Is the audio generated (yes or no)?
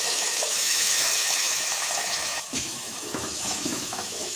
yes